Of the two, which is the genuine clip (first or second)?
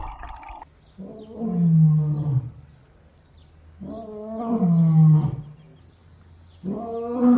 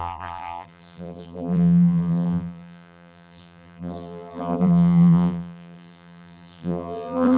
first